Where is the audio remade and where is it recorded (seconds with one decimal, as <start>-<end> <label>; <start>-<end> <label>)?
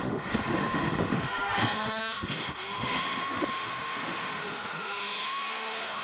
0.0-6.0 remade